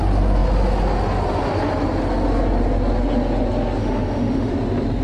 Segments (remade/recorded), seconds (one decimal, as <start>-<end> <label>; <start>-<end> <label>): 0.0-3.8 recorded; 3.8-4.5 remade; 4.5-5.0 recorded